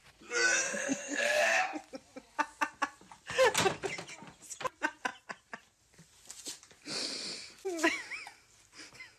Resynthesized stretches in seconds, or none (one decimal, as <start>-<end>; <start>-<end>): 0.6-1.6